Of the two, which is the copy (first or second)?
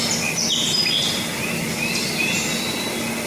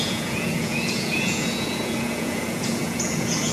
second